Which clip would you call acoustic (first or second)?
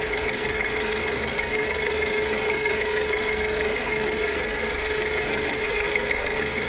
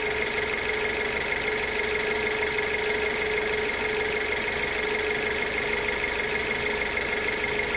second